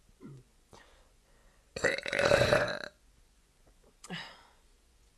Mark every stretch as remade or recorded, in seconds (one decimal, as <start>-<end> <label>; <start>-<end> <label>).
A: 0.0-5.2 remade